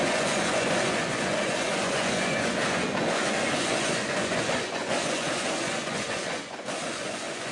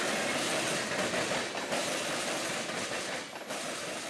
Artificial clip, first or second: first